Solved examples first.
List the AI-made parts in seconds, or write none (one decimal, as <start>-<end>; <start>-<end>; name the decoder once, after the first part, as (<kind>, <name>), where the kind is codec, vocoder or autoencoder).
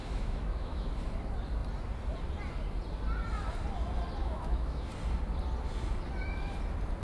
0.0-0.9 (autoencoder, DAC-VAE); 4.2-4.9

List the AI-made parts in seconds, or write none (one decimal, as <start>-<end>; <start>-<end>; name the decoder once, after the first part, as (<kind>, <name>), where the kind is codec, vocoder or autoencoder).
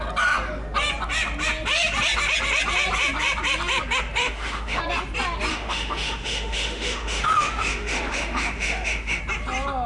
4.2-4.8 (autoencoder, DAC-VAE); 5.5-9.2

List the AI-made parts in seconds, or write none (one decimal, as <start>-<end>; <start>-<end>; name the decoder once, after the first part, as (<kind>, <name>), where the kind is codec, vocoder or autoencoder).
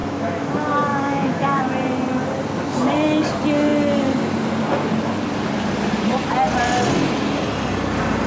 0.0-0.5 (autoencoder, DAC-VAE); 0.9-1.6